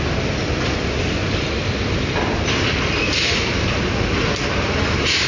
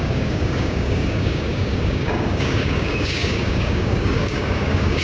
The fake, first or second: second